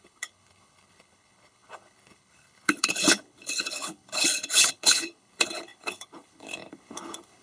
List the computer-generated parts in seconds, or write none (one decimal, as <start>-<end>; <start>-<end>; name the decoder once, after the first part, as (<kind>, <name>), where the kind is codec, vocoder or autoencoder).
0.0-7.4 (codec, HILCodec)

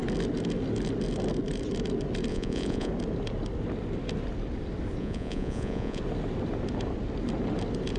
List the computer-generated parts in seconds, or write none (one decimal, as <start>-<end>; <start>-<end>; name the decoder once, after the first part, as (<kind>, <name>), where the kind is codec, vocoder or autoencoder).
2.3-2.9 (vocoder, Vocos); 5.0-6.0

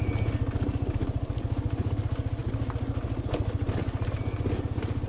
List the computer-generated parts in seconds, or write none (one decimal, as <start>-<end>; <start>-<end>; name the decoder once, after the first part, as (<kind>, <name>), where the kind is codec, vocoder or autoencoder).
none

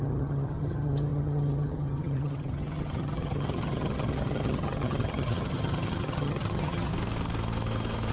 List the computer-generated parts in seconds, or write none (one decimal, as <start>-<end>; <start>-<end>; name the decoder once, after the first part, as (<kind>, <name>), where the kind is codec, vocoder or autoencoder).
0.0-6.9 (vocoder, HiFi-GAN)

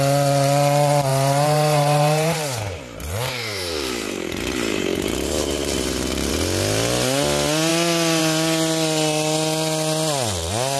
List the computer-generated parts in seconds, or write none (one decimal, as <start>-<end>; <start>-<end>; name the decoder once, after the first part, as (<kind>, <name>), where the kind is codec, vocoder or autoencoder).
1.1-6.3 (vocoder, BigVGAN v2)

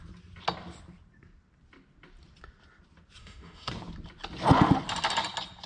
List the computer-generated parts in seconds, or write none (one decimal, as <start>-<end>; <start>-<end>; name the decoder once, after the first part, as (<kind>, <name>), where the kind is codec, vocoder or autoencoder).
3.2-3.7 (autoencoder, DAC-VAE)